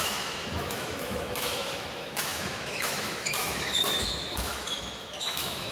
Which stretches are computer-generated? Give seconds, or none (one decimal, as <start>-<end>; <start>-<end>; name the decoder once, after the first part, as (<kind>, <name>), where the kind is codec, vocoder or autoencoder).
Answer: 0.0-5.7 (autoencoder, DAC-VAE)

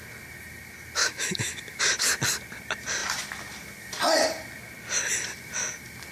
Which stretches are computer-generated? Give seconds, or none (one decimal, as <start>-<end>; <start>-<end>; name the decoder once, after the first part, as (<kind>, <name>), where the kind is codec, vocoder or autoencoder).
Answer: 1.0-1.8 (autoencoder, DAC-VAE)

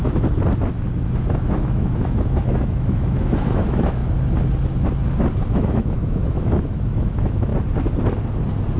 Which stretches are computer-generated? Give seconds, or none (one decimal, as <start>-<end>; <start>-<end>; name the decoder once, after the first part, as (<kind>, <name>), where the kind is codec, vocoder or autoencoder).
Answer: 1.3-4.0 (autoencoder, DAC-VAE); 5.5-7.5

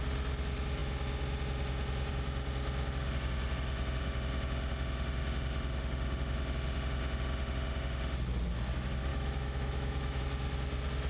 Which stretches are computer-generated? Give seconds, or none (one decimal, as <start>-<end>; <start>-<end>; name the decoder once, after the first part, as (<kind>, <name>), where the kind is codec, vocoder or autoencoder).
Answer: 9.1-10.2 (autoencoder, DAC-VAE)

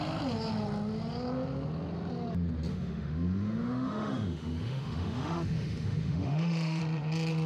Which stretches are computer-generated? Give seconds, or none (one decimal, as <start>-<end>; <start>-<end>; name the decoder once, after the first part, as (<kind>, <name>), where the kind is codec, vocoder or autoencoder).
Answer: 2.7-6.8 (autoencoder, DAC-VAE)

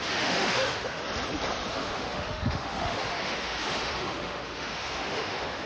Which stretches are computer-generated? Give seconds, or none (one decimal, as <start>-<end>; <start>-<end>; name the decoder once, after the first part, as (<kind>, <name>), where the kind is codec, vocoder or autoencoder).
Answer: 0.0-1.0 (autoencoder, DAC-VAE); 1.7-5.7

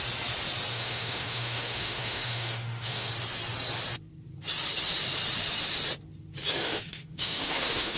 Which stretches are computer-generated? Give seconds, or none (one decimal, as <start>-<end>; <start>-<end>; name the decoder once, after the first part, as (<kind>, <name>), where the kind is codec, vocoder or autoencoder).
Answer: 0.7-3.1 (autoencoder, DAC-VAE); 6.6-8.0

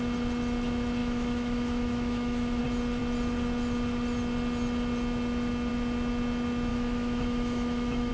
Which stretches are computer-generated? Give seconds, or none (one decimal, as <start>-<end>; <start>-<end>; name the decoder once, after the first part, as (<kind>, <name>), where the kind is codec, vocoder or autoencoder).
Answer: 1.0-2.6 (autoencoder, DAC-VAE); 6.7-8.1